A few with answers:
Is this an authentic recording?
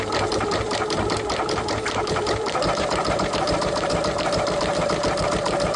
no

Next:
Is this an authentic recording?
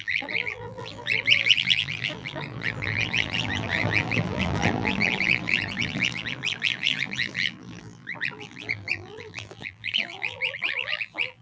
no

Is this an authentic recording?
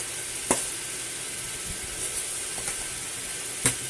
yes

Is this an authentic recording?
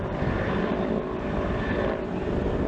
yes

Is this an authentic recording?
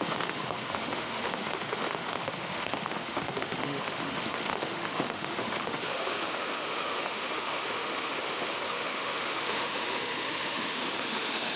no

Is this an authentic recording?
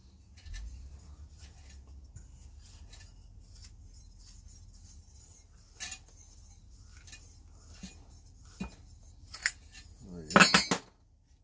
yes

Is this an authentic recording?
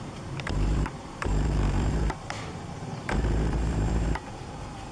no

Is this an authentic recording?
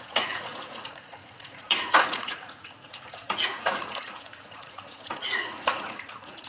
no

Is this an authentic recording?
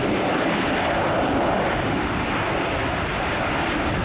yes